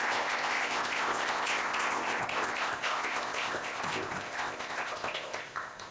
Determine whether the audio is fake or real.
fake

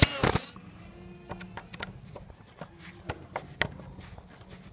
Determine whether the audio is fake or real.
real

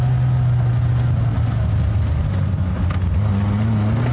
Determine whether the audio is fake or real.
real